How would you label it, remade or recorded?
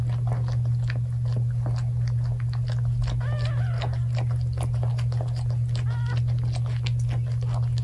recorded